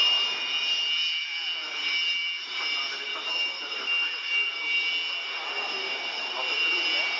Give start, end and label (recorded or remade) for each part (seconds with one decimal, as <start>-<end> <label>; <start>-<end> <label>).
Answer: 0.0-7.2 recorded